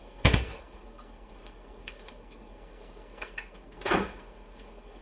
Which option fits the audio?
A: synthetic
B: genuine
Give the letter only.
A